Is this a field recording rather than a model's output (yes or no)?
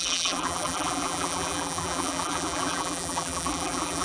no